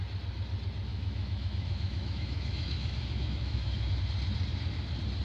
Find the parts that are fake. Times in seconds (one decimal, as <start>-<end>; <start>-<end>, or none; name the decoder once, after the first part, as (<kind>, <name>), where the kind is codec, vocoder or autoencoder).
0.9-4.0 (autoencoder, DAC-VAE)